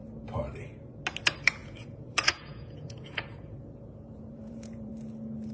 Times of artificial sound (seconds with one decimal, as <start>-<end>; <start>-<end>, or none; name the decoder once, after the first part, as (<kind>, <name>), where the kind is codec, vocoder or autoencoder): 1.6-4.9 (vocoder, Vocos)